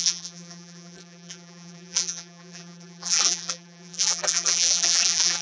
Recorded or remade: remade